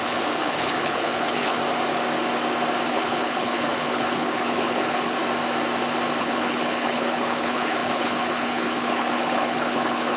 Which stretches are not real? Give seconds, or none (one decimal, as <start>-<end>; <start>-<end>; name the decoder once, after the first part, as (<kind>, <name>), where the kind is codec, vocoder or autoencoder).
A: 0.0-1.6 (codec, HILCodec); 2.9-5.2; 6.2-10.2